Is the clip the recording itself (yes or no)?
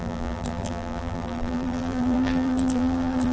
no